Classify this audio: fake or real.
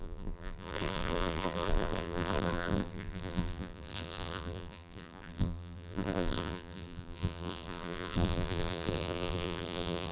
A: fake